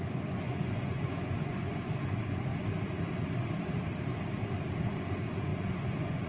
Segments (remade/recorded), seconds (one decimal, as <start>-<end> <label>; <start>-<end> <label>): 0.0-2.5 remade; 2.5-4.9 recorded; 4.9-6.3 remade